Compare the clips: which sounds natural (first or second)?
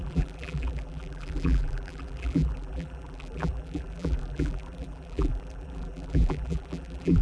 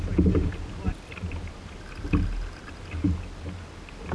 second